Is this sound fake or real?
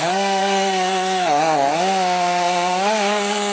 fake